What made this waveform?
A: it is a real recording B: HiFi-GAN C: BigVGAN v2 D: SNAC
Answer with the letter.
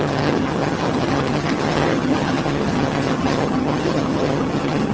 B